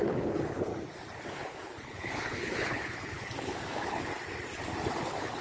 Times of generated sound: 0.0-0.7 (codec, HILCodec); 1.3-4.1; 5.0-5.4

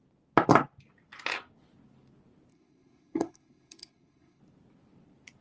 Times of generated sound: 2.5-4.4 (codec, HILCodec)

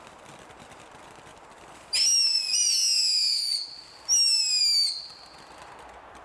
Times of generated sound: none

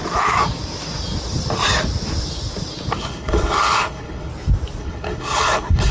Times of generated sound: 3.0-4.3 (codec, HILCodec); 4.8-5.9

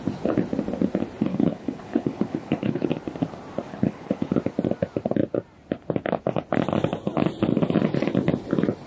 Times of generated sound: 1.3-2.9 (codec, HILCodec); 3.7-4.3

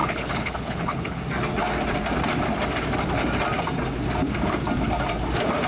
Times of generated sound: 0.0-1.2 (codec, HILCodec)